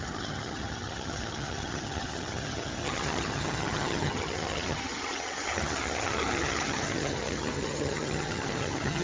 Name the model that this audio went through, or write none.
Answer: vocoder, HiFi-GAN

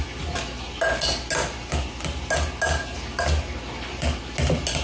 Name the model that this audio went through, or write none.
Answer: none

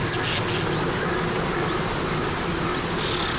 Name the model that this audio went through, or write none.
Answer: none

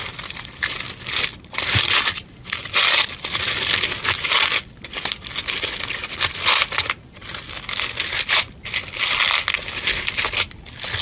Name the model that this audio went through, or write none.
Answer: none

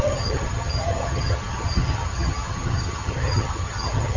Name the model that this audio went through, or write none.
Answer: vocoder, HiFi-GAN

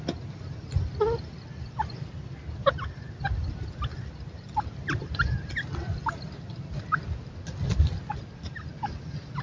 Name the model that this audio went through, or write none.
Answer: none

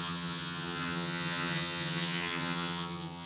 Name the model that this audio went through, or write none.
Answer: vocoder, HiFi-GAN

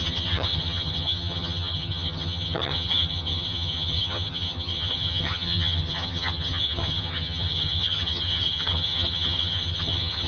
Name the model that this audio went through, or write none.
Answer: vocoder, HiFi-GAN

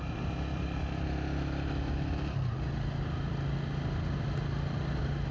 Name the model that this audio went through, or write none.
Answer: none